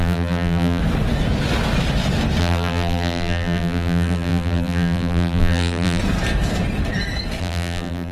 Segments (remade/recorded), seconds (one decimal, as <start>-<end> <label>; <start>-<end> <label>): 0.0-0.8 remade; 0.8-2.4 recorded; 2.4-6.0 remade; 6.0-7.4 recorded; 7.4-8.1 remade